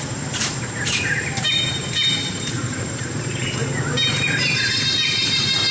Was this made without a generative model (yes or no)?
no